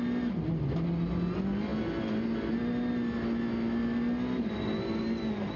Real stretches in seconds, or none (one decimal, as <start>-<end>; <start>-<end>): 0.0-5.6